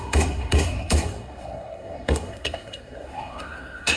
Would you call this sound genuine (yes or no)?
no